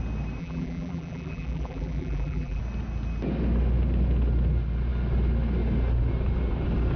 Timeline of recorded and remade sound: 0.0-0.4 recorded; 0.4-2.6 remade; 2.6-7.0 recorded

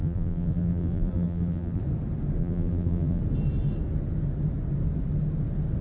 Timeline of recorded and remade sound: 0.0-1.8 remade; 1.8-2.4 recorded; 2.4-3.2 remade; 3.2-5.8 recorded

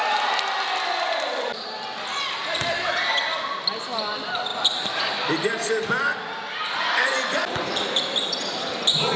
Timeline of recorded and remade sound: 0.0-9.2 recorded

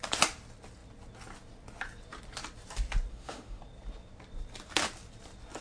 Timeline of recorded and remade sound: 0.0-3.1 recorded; 3.1-3.6 remade; 3.6-5.6 recorded

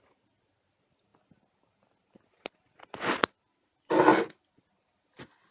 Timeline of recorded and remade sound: 0.0-5.5 recorded

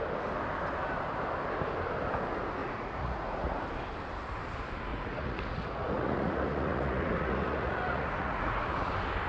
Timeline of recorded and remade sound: 0.0-2.6 recorded; 2.6-3.6 remade; 3.6-4.9 recorded; 4.9-8.9 remade; 8.9-9.3 recorded